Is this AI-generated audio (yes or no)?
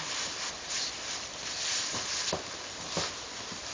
no